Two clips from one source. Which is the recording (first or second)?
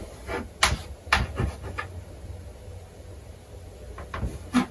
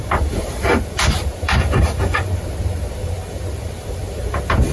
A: first